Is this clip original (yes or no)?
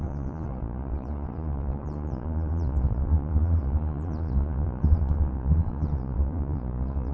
no